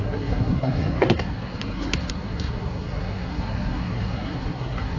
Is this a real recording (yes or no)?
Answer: no